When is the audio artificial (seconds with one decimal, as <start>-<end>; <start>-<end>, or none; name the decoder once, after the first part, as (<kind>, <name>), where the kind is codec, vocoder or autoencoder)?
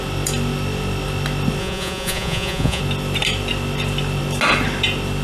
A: 1.6-2.8 (vocoder, Vocos)